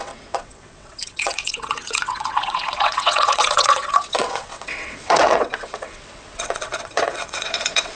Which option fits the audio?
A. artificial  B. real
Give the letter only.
A